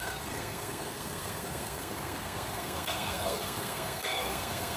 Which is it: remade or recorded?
remade